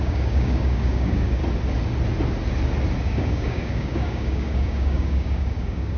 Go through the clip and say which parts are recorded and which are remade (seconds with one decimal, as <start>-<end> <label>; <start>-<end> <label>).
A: 0.0-1.4 remade; 1.4-3.0 recorded; 3.0-6.0 remade